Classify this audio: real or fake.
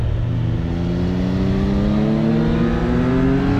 real